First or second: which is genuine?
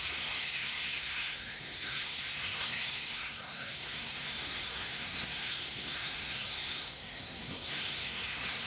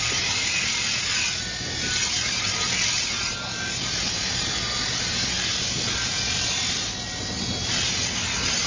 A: second